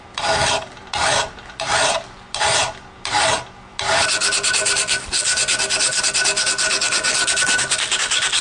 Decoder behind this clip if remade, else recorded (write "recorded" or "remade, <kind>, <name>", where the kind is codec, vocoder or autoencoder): recorded